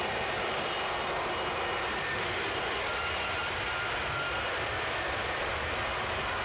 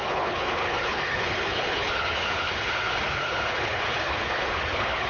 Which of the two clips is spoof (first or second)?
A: second